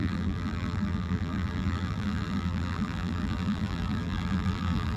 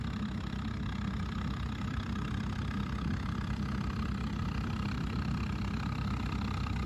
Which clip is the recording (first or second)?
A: second